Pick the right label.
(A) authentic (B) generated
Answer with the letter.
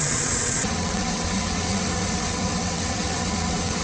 B